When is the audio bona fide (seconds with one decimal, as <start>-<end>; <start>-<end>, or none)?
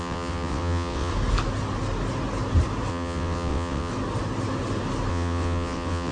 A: 1.1-2.9; 3.9-5.1